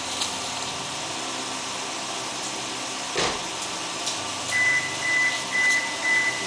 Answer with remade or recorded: recorded